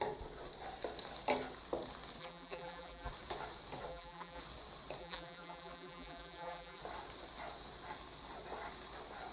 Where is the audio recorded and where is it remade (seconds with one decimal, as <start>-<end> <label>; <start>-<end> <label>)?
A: 0.0-2.2 recorded; 2.2-3.1 remade; 3.1-3.9 recorded; 3.9-4.4 remade; 4.4-5.0 recorded; 5.0-6.8 remade; 6.8-9.3 recorded